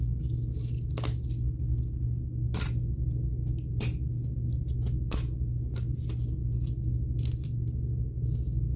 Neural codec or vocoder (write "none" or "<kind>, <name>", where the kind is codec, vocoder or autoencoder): none